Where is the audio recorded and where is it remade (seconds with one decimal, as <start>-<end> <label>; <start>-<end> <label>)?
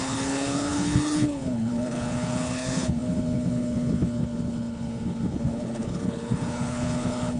0.0-7.4 remade